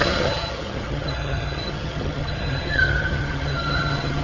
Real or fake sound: fake